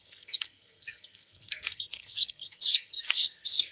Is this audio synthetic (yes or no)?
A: yes